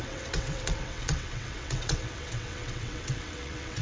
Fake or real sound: fake